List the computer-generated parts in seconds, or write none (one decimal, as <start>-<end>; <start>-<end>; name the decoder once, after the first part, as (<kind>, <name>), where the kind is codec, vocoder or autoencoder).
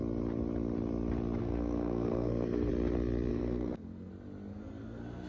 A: 1.4-2.7 (codec, SNAC); 3.3-4.1; 4.5-5.3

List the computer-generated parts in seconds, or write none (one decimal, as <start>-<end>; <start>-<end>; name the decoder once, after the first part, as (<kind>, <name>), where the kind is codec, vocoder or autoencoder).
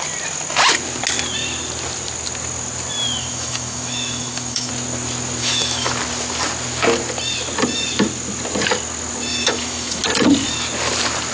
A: 3.2-4.7 (autoencoder, DAC-VAE); 5.4-5.9; 9.3-10.0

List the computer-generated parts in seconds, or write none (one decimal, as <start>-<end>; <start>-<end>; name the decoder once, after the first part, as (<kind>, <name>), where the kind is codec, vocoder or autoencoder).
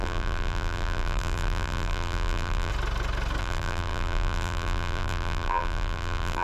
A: 0.0-2.7 (vocoder, BigVGAN v2); 3.4-6.4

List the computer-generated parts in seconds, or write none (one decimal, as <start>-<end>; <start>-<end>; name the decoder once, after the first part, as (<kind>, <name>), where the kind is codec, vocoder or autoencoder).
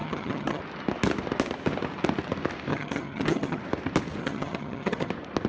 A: 0.0-0.6 (vocoder, HiFi-GAN); 2.7-3.6; 4.2-5.1